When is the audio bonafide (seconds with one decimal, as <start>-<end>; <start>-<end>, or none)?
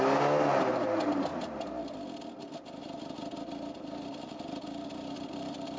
0.0-5.8